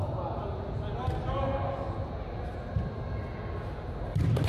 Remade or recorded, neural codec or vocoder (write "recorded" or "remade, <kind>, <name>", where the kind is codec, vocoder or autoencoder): recorded